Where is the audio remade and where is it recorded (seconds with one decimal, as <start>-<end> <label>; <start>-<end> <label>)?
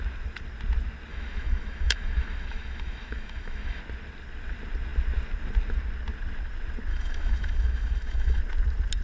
0.0-1.1 recorded; 1.1-3.8 remade; 3.8-6.9 recorded; 6.9-8.4 remade; 8.4-9.0 recorded